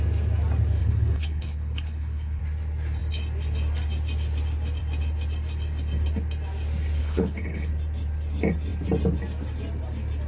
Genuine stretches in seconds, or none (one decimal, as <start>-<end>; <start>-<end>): 0.0-0.8; 2.4-7.0; 7.7-10.3